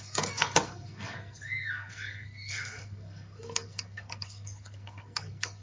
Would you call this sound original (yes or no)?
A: no